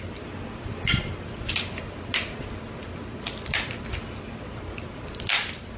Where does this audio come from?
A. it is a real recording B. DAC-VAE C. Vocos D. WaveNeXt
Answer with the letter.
A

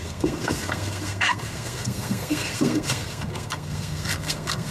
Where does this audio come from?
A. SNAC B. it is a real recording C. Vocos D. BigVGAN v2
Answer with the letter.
A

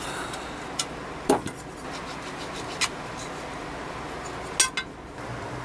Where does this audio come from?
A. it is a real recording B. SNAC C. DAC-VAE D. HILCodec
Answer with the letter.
A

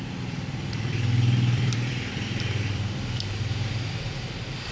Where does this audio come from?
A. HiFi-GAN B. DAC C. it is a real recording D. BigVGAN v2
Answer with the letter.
D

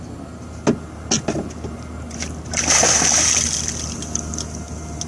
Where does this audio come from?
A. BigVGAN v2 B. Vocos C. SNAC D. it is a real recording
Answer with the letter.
D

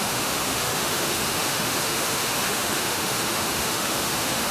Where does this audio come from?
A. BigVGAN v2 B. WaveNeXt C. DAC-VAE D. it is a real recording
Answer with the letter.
C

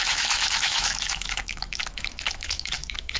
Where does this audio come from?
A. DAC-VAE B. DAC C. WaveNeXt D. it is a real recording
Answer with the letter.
A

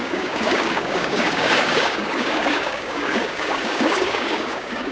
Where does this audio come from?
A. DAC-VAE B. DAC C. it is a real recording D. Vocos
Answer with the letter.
B